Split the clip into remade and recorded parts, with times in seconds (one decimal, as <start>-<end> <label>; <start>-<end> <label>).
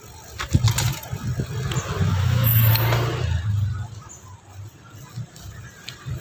0.0-2.1 recorded; 2.1-2.7 remade; 2.7-6.2 recorded